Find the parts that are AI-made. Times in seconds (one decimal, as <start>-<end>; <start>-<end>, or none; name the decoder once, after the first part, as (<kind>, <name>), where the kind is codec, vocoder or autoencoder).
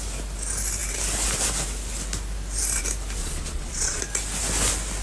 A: 3.2-4.0 (vocoder, Vocos)